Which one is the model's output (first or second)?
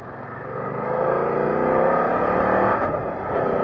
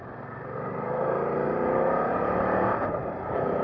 second